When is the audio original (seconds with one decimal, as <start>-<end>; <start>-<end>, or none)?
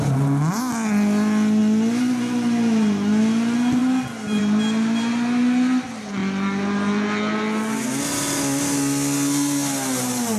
0.0-10.4